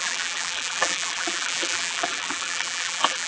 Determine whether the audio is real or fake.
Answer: fake